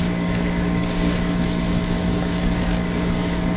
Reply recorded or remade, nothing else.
remade